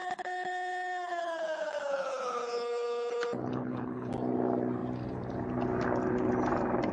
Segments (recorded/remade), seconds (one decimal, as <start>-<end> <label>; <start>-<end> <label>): 0.0-4.1 remade; 4.1-6.9 recorded